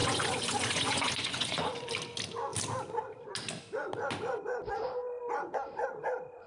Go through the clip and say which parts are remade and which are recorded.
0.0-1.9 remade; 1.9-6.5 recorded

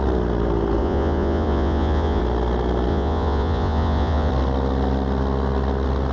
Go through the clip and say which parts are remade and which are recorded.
0.0-0.8 recorded; 0.8-2.2 remade; 2.2-2.9 recorded; 2.9-4.3 remade; 4.3-6.1 recorded

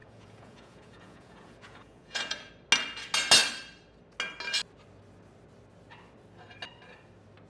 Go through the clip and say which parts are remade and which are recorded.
0.0-2.5 remade; 2.5-7.5 recorded

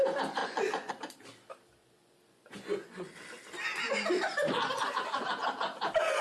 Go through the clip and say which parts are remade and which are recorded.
0.0-0.4 recorded; 0.4-0.9 remade; 0.9-1.8 recorded; 1.8-3.1 remade; 3.1-6.2 recorded